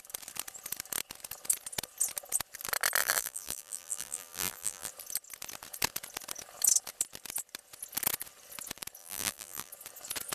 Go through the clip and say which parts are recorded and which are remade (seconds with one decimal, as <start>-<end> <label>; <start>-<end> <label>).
0.0-3.0 recorded; 3.0-4.9 remade; 4.9-9.0 recorded; 9.0-9.7 remade; 9.7-10.3 recorded